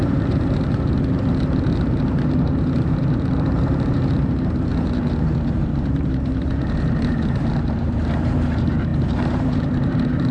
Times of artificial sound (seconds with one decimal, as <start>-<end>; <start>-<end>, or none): 0.0-4.7; 5.5-10.3